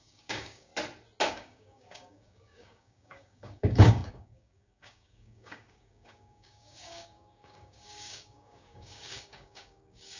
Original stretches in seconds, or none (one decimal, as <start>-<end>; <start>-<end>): 0.7-1.3